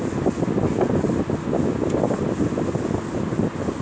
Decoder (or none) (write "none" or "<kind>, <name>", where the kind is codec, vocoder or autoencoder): none